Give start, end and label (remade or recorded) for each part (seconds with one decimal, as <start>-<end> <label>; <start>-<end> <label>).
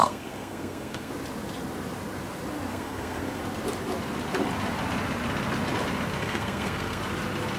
0.0-1.1 remade; 1.1-2.7 recorded; 2.7-3.4 remade; 3.4-6.2 recorded; 6.2-7.0 remade; 7.0-7.6 recorded